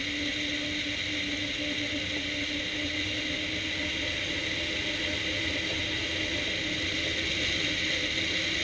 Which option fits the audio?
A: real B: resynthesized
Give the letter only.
A